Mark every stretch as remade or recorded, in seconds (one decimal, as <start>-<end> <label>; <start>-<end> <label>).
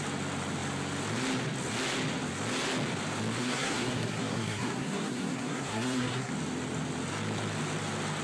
0.0-3.4 recorded; 3.4-6.3 remade; 6.3-8.2 recorded